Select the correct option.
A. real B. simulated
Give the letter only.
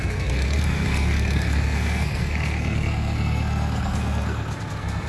B